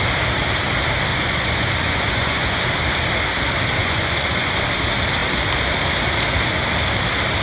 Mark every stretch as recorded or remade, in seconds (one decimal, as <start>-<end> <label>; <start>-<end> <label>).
0.0-1.1 recorded; 1.1-2.6 remade; 2.6-3.8 recorded; 3.8-4.6 remade; 4.6-7.4 recorded